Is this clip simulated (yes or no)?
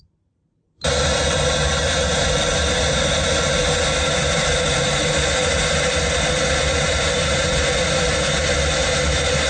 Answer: no